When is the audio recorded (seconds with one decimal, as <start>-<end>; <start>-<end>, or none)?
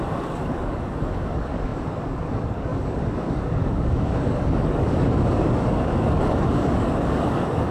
none